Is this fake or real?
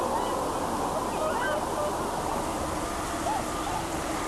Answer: real